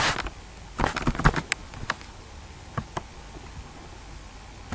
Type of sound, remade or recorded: recorded